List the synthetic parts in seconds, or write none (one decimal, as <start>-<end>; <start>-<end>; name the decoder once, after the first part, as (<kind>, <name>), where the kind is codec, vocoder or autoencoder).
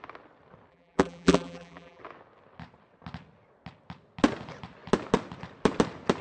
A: 0.7-2.0 (vocoder, BigVGAN v2)